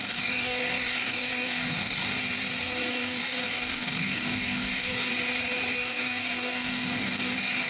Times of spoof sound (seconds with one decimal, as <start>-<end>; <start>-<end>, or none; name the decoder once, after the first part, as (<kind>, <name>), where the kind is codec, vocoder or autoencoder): 0.0-2.2 (codec, DAC); 2.9-5.1; 5.7-7.7